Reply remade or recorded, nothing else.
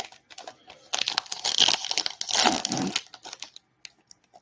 recorded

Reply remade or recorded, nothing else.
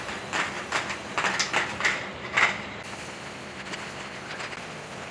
recorded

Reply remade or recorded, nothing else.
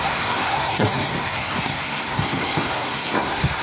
remade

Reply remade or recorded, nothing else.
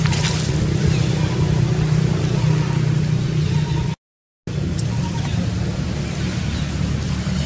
recorded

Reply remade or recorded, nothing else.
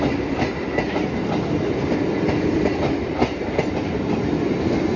recorded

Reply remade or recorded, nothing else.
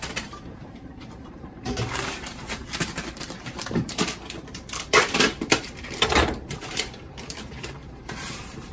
remade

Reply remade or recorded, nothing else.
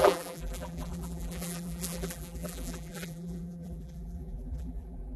remade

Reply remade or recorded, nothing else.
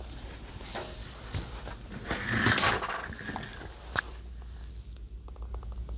recorded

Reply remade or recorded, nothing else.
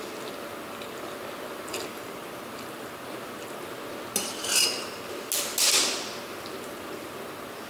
recorded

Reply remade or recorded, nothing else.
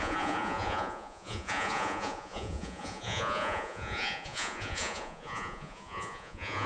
remade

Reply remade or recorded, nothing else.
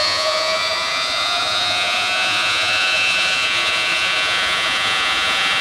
remade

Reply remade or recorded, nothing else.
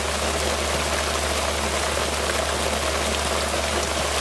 recorded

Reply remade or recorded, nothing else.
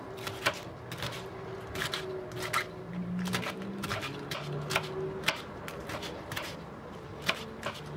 recorded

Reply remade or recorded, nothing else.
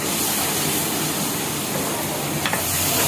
recorded